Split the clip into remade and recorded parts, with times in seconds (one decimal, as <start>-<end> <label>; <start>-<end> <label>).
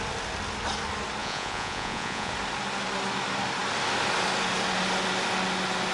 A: 0.0-1.2 recorded; 1.2-2.3 remade; 2.3-5.9 recorded